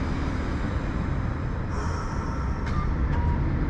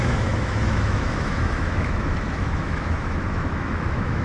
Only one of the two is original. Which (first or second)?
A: first